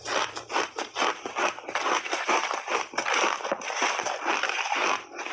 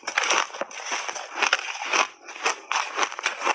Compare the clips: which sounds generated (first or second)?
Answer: first